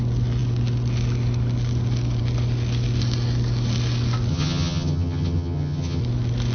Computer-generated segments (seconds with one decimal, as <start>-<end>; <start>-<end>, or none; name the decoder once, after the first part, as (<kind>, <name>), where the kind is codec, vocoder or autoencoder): 4.3-6.0 (vocoder, HiFi-GAN)